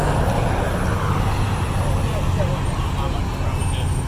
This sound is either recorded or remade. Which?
recorded